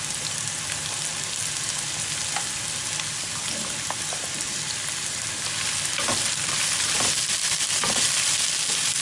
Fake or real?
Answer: real